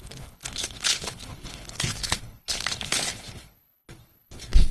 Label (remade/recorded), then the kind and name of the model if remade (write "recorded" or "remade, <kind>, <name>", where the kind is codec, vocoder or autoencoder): remade, codec, HILCodec